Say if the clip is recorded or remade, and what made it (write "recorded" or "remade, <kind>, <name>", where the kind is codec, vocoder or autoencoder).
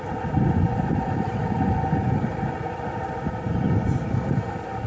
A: recorded